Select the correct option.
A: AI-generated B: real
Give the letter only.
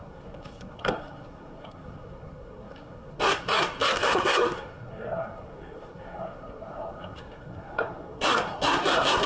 A